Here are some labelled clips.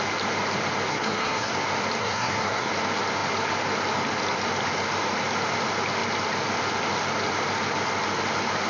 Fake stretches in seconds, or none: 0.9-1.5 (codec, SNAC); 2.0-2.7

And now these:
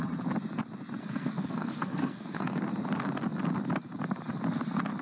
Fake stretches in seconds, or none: 1.0-2.6 (codec, SNAC)

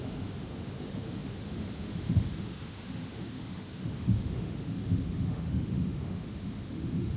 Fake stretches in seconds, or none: 0.0-7.2 (autoencoder, DAC-VAE)

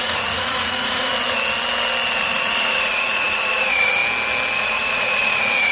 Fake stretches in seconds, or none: 0.0-1.1 (vocoder, Vocos); 2.2-4.0; 4.5-5.7

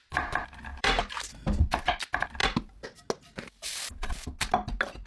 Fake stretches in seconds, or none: 0.7-1.3 (vocoder, BigVGAN v2)